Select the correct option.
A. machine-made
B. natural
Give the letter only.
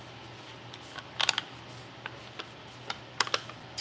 B